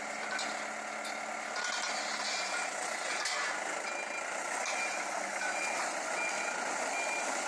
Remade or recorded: recorded